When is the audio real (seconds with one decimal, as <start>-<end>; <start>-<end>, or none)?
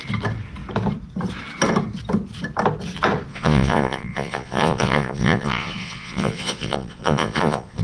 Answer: 0.0-3.3